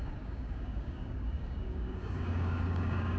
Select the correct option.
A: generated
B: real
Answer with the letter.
A